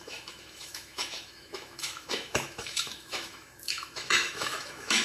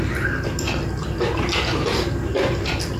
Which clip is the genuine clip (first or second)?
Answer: second